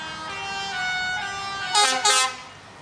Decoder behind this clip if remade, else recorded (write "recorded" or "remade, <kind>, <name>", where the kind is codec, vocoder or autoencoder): recorded